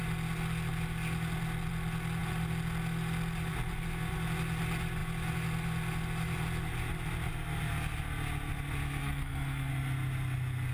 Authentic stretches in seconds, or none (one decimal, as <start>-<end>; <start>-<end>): 0.0-9.0; 9.7-10.7